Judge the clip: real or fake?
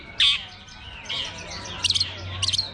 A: real